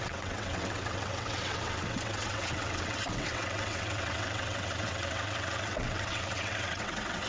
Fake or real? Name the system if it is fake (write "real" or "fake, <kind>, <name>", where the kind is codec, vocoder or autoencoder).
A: fake, vocoder, WaveNeXt